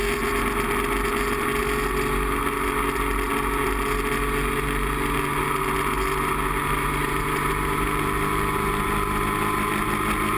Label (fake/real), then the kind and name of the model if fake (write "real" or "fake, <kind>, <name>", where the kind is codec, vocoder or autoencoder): real